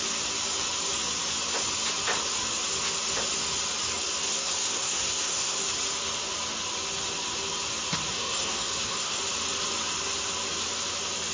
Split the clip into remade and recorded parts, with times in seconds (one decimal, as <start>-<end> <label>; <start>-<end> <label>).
0.0-4.2 recorded; 4.2-5.6 remade; 5.6-8.1 recorded; 8.1-9.2 remade; 9.2-11.3 recorded